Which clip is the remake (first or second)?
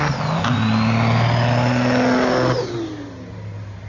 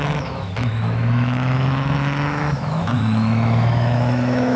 second